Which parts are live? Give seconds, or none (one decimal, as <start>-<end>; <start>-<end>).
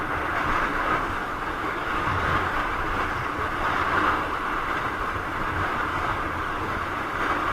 0.0-0.7; 2.7-5.9; 6.8-7.5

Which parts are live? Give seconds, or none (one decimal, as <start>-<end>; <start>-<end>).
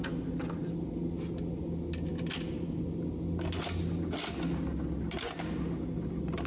0.0-6.5